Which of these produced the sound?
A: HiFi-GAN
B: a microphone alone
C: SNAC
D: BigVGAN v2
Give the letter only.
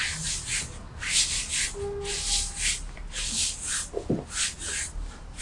B